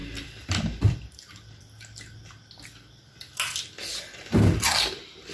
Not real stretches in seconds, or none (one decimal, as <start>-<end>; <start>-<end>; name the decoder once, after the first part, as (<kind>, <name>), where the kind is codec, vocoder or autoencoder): 0.0-1.6 (vocoder, BigVGAN v2)